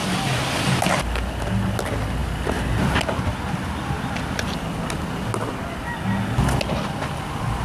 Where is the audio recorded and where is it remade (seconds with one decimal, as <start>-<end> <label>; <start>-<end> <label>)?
0.0-7.6 recorded